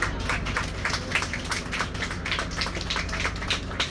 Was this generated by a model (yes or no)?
no